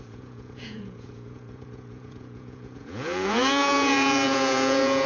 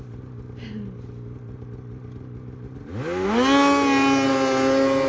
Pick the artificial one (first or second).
first